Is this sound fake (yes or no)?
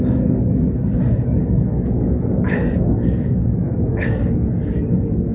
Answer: yes